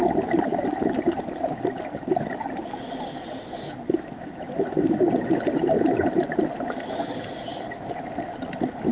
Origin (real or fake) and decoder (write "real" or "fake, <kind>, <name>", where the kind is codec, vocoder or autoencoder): real